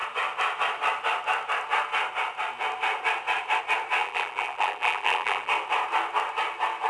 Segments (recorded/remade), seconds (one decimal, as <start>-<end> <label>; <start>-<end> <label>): 0.0-4.0 recorded; 4.0-5.5 remade; 5.5-6.9 recorded